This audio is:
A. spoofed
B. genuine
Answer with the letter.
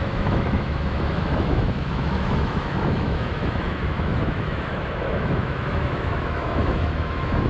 A